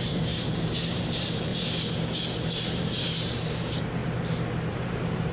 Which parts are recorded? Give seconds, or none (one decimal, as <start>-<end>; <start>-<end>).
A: 1.5-2.6; 4.0-4.7